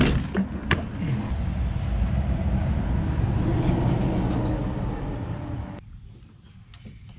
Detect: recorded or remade recorded